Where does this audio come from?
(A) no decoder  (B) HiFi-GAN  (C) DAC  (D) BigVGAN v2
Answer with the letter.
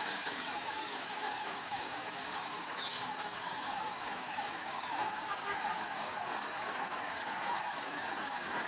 C